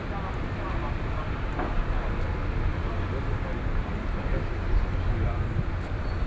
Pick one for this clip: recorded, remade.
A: recorded